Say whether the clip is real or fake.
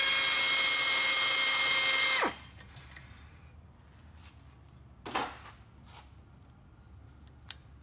real